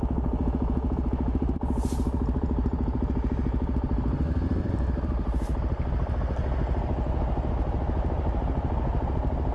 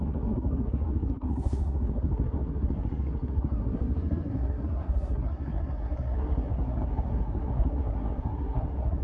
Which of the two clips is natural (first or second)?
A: first